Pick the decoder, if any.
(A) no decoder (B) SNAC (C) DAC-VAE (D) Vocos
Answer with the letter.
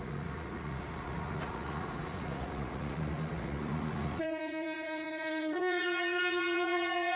D